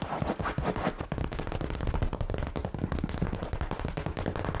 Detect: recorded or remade recorded